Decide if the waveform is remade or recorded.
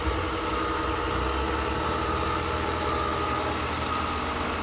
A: recorded